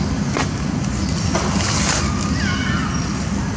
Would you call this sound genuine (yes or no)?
yes